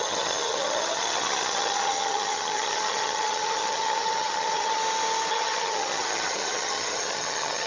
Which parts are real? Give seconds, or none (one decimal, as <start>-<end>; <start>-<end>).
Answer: 4.8-5.3